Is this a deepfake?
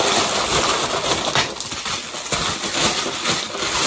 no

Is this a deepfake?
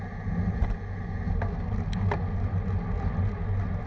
no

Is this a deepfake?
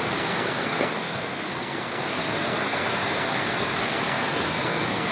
yes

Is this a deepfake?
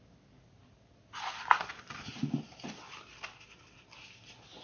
no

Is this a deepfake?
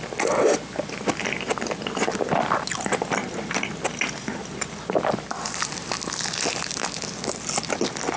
no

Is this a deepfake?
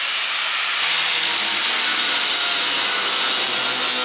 no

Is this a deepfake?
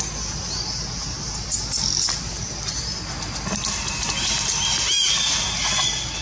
no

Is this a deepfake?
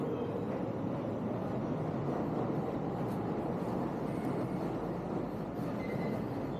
no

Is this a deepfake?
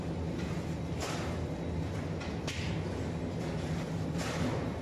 no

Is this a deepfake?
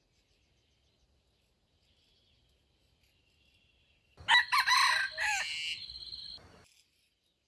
no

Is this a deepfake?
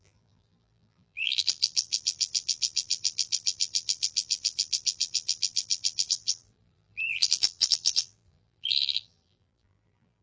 yes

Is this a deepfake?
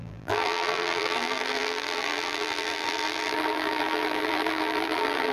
yes